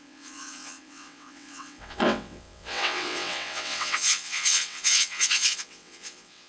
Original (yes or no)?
no